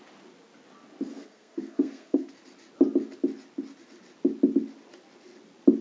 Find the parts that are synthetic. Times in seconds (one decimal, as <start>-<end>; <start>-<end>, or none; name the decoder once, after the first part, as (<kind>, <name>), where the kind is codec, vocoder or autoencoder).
1.1-2.3 (codec, SNAC)